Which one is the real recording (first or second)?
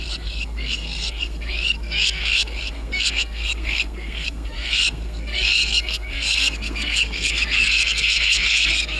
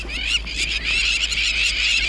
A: second